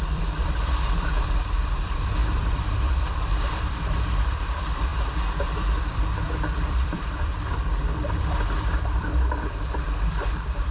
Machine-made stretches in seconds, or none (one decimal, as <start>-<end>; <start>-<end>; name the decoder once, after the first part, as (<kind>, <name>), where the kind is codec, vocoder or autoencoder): 0.0-4.9 (vocoder, BigVGAN v2); 5.4-10.7